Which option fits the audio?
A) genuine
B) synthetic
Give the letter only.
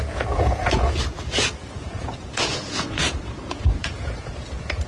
B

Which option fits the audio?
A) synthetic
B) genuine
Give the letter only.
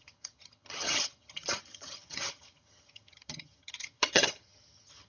A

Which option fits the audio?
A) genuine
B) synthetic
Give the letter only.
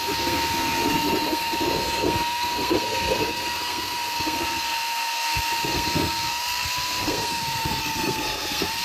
B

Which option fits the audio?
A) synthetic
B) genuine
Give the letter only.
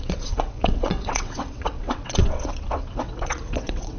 A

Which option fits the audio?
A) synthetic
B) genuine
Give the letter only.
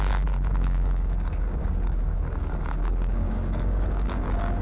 A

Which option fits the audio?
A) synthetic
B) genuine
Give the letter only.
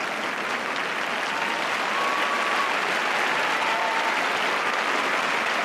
B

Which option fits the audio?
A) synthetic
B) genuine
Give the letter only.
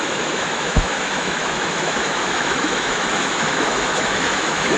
A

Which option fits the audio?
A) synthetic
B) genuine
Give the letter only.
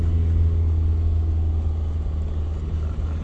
B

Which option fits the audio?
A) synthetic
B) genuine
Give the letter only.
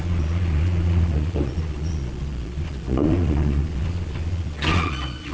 A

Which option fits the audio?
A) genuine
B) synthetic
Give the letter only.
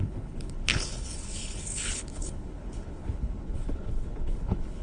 B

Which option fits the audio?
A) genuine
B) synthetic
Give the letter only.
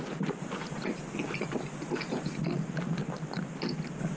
A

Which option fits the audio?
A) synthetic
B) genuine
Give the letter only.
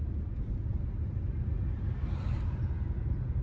B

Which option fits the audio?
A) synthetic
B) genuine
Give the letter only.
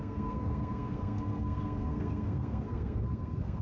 A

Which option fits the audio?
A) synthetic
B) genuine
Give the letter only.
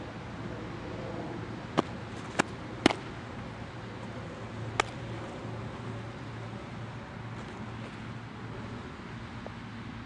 B